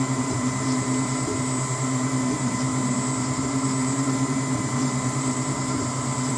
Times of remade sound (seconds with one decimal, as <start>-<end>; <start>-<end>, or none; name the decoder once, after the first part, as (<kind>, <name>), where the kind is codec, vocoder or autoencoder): 0.0-2.7 (vocoder, BigVGAN v2); 3.2-6.4